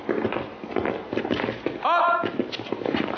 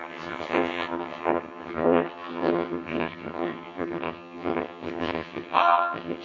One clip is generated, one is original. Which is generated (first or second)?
second